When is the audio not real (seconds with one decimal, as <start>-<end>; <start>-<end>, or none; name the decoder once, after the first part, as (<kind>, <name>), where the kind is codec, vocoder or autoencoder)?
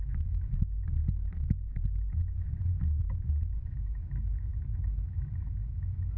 0.0-1.0 (autoencoder, DAC-VAE); 3.3-4.5; 5.1-6.2